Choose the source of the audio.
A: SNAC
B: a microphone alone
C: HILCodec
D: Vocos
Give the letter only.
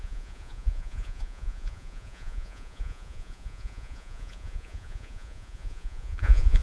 D